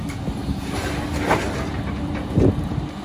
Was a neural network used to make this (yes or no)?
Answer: no